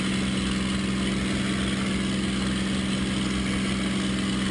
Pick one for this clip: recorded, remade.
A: recorded